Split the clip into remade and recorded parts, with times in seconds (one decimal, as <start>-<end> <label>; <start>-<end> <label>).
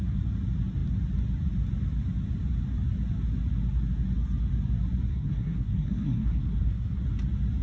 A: 0.0-5.1 recorded; 5.1-7.0 remade; 7.0-7.6 recorded